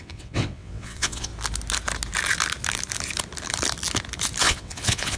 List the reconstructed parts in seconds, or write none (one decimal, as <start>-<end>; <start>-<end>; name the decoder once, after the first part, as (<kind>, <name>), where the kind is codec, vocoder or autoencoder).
0.0-1.3 (vocoder, WaveNeXt); 4.4-5.2

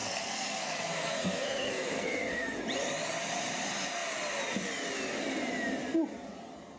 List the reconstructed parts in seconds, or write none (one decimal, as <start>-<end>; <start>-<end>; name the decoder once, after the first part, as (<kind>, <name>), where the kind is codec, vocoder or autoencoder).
0.0-2.6 (codec, SNAC)